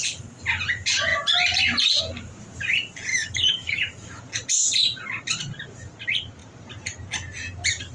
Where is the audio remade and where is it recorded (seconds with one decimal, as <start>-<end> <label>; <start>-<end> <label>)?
0.0-3.1 recorded; 3.1-4.2 remade; 4.2-7.9 recorded